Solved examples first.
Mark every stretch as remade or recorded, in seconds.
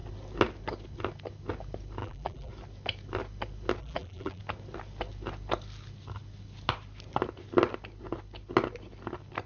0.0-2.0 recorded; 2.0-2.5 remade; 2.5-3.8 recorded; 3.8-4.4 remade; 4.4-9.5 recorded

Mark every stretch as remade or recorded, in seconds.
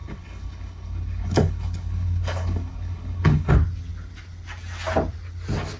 0.0-3.5 remade; 3.5-5.8 recorded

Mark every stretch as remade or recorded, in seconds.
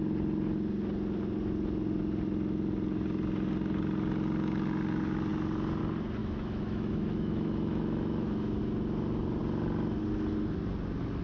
0.0-6.2 recorded; 6.2-8.6 remade; 8.6-11.2 recorded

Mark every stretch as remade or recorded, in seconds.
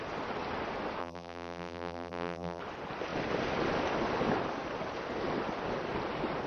0.0-1.0 recorded; 1.0-2.6 remade; 2.6-6.5 recorded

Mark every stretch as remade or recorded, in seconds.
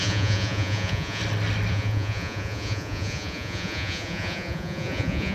0.0-1.2 remade; 1.2-1.7 recorded; 1.7-5.3 remade